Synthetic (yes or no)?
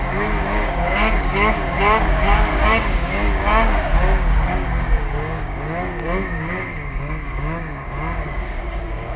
yes